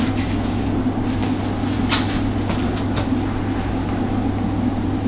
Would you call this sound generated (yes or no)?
no